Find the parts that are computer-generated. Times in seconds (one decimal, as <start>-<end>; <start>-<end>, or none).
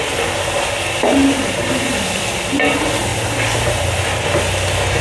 none